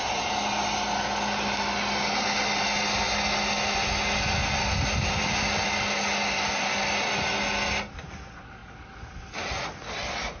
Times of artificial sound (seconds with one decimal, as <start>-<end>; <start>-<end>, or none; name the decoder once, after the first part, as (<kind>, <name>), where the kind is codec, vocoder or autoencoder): none